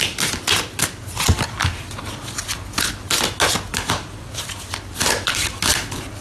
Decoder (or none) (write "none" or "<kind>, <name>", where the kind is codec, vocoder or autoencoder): none